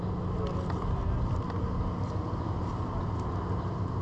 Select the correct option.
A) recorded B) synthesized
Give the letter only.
A